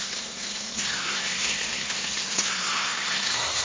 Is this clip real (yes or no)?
no